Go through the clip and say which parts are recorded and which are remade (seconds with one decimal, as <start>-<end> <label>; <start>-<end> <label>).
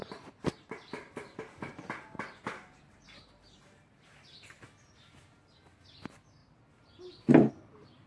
0.0-3.9 remade; 3.9-8.1 recorded